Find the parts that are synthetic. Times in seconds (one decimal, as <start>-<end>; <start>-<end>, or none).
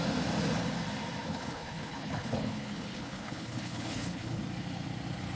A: 1.2-4.4